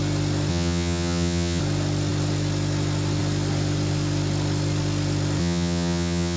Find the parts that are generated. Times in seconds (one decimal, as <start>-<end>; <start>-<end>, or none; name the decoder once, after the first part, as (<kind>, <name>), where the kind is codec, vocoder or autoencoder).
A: 0.5-1.6 (vocoder, HiFi-GAN); 5.4-6.4